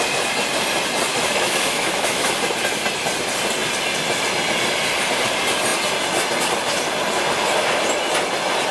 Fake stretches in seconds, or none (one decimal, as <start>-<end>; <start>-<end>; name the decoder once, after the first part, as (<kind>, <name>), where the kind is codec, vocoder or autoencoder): 1.1-2.3 (autoencoder, DAC-VAE)